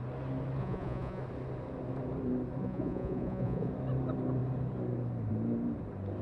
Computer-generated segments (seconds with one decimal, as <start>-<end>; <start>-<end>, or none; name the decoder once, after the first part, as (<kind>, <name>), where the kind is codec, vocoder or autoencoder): 0.6-1.2 (vocoder, Vocos); 2.6-3.7